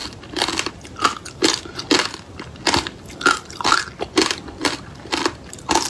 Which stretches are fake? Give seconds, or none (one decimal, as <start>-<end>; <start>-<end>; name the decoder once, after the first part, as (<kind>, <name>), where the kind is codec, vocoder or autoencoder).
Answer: none